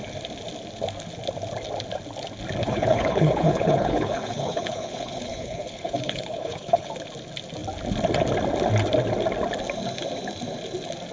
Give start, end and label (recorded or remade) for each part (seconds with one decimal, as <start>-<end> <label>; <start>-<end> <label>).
0.0-2.6 recorded; 2.6-6.9 remade; 6.9-11.1 recorded